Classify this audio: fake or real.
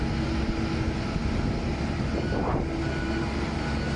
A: real